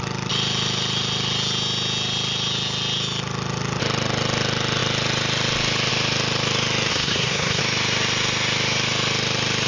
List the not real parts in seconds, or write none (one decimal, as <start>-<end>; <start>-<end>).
6.9-7.6